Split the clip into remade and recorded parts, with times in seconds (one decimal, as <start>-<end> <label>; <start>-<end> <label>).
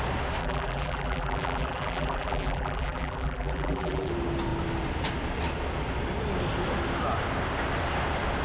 0.0-0.4 recorded; 0.4-4.1 remade; 4.1-8.4 recorded